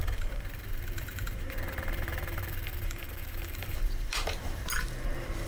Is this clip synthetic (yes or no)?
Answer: yes